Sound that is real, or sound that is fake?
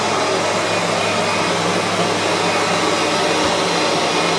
real